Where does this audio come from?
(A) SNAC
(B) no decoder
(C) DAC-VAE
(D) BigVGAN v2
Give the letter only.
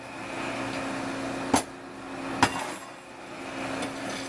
B